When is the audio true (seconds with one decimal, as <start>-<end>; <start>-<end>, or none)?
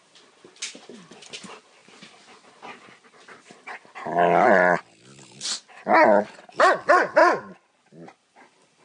0.0-8.8